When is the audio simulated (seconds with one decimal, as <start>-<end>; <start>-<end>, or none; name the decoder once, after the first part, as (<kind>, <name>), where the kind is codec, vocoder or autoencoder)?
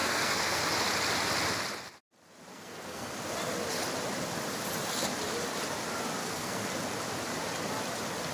0.0-0.6 (codec, SNAC); 2.5-3.1; 6.2-6.7